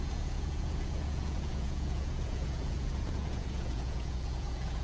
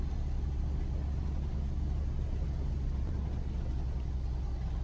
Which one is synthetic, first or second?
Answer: first